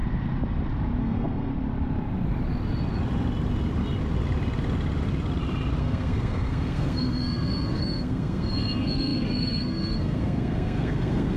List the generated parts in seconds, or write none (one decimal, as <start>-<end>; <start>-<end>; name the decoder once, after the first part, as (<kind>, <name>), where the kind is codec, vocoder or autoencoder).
1.0-1.5 (codec, SNAC); 5.8-11.4

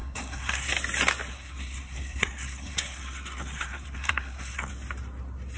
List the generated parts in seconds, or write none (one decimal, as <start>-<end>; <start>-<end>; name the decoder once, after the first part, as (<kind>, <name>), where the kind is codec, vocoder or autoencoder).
0.0-0.7 (codec, SNAC); 1.3-4.7

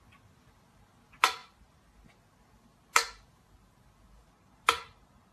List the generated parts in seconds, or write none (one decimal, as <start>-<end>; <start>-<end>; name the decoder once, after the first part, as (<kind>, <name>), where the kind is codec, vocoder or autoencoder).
4.2-4.7 (vocoder, BigVGAN v2)